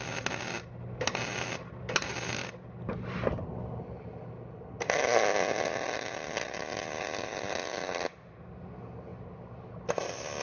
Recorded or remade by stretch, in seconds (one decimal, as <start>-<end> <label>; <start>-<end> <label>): 0.0-10.4 recorded